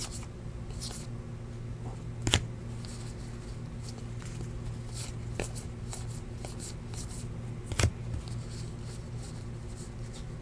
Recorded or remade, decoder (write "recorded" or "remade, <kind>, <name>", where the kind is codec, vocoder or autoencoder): recorded